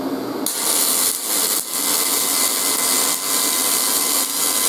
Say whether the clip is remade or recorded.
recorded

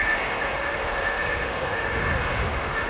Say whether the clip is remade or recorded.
remade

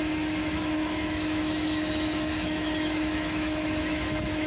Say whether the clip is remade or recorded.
remade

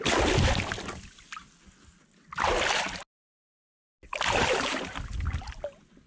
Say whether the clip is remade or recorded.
recorded